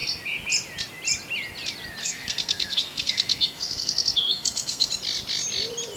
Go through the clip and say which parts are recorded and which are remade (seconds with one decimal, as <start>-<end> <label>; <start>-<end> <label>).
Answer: 0.0-2.0 recorded; 2.0-4.9 remade; 4.9-6.0 recorded